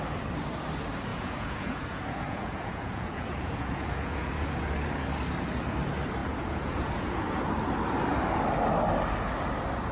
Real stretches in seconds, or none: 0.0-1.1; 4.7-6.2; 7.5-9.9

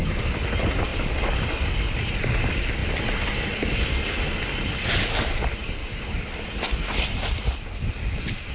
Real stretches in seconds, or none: 0.0-8.5

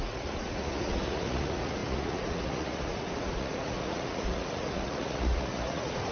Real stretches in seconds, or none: none

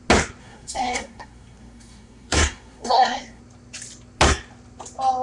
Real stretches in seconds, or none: 0.0-0.4; 3.4-5.2

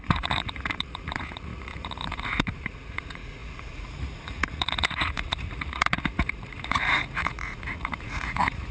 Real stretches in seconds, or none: none